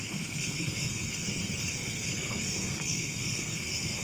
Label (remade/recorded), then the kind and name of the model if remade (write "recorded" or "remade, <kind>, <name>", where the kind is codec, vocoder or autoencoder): remade, codec, SNAC